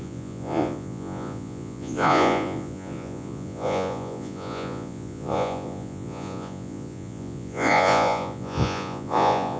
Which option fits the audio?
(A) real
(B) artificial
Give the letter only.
B